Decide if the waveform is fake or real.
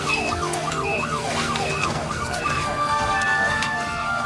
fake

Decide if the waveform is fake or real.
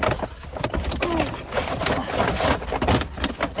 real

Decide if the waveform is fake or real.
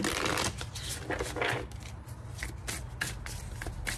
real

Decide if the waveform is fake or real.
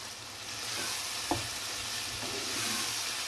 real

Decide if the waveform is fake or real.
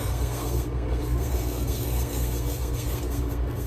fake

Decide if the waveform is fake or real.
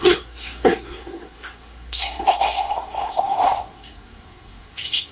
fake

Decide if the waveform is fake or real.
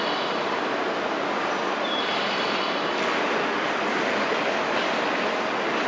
real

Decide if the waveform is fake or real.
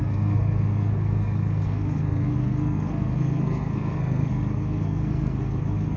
fake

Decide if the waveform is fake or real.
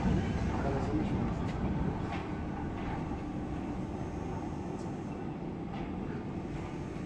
real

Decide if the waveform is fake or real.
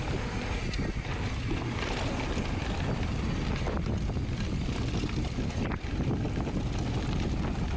real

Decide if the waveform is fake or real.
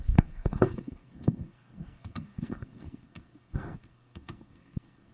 fake